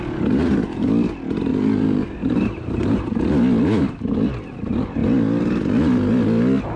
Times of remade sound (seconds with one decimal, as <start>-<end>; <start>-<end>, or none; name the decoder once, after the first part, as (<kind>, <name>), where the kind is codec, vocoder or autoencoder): 1.5-3.3 (vocoder, BigVGAN v2)